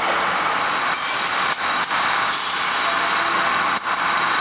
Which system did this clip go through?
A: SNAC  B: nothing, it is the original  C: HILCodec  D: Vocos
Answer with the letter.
B